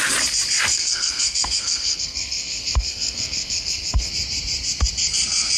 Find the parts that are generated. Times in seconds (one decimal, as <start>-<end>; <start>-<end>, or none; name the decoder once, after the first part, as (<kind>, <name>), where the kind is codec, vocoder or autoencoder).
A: 0.7-4.1 (codec, SNAC)